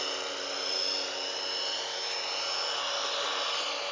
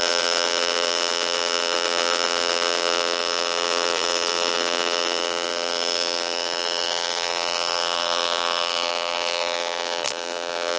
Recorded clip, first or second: first